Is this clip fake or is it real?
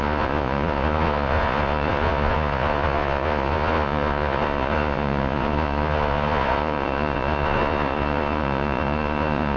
fake